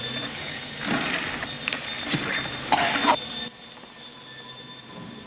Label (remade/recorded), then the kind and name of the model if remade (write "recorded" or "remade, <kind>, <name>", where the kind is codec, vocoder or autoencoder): remade, vocoder, BigVGAN v2